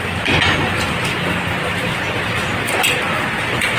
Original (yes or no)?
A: yes